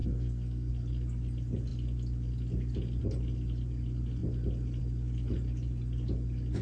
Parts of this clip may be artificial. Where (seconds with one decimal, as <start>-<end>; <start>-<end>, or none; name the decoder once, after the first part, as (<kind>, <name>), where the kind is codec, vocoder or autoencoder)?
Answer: 0.0-0.7 (codec, SNAC)